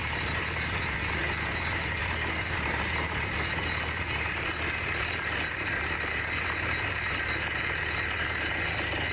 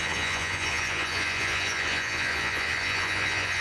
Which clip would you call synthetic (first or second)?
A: second